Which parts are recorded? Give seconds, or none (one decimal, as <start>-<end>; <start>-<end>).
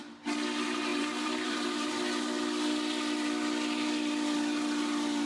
0.0-0.9; 1.9-5.3